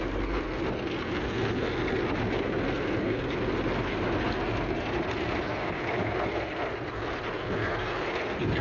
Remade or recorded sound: recorded